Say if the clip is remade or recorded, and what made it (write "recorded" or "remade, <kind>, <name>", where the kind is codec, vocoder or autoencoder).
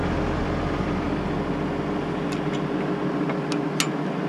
recorded